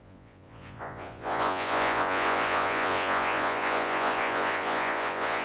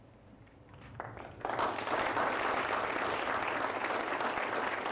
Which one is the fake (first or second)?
first